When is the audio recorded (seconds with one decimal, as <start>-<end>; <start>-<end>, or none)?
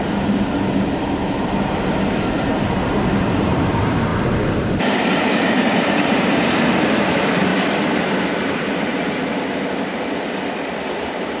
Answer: 7.5-10.9